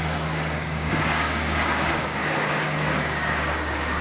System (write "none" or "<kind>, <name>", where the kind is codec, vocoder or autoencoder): codec, DAC